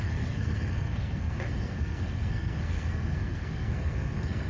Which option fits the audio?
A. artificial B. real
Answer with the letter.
A